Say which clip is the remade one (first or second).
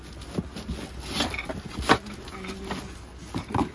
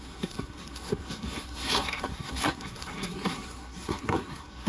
second